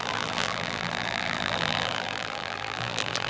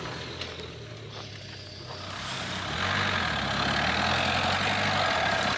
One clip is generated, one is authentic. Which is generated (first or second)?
first